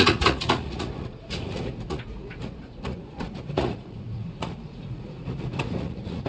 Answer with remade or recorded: remade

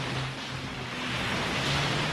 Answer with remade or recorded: recorded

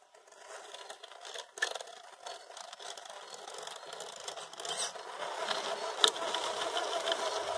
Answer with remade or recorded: recorded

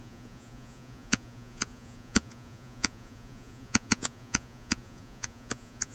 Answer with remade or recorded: remade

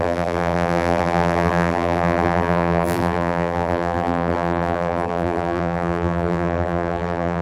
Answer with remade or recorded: remade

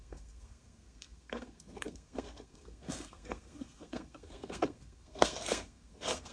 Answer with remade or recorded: remade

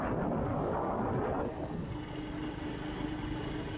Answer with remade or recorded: recorded